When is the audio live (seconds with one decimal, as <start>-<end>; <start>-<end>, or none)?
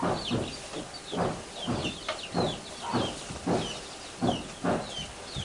0.0-5.4